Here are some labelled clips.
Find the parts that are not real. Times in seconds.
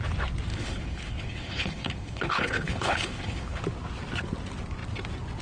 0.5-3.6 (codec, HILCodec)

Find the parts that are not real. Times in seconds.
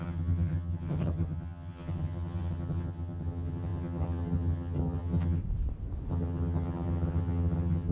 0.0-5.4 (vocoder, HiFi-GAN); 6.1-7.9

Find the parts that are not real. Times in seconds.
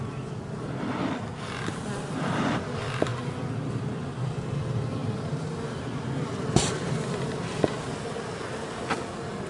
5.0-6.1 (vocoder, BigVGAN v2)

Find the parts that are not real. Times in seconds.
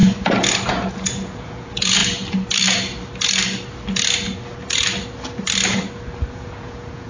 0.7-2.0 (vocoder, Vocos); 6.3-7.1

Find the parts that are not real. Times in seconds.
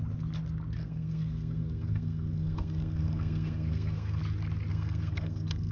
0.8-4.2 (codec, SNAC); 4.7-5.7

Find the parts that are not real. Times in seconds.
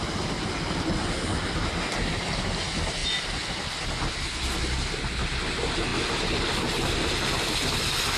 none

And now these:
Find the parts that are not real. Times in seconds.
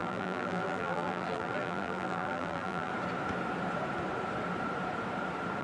0.0-2.9 (vocoder, BigVGAN v2)